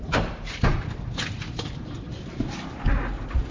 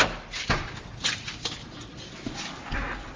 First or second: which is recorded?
second